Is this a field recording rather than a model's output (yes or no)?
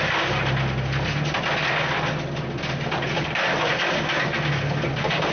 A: yes